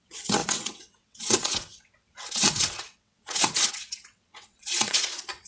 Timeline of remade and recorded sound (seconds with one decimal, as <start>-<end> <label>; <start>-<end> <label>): 0.0-5.5 remade